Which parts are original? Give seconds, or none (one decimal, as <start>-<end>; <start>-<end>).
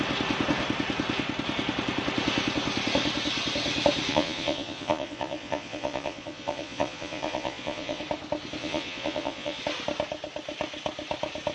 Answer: 0.0-4.1; 8.0-8.6; 9.6-11.5